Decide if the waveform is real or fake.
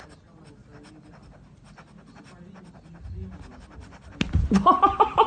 real